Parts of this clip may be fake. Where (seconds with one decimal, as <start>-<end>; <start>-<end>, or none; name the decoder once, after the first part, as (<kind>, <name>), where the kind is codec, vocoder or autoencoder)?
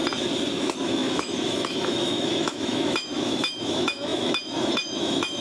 0.5-5.4 (autoencoder, DAC-VAE)